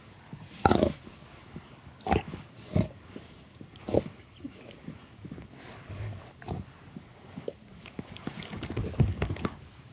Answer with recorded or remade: remade